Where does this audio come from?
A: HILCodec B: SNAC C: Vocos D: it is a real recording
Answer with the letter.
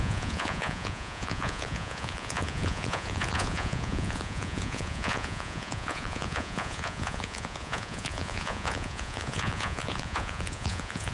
C